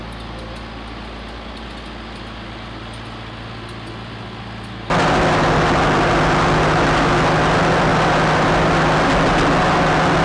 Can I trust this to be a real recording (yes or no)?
yes